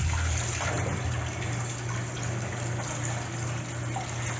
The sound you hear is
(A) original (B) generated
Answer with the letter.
A